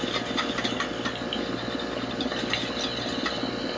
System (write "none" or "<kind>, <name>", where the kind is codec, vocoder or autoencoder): none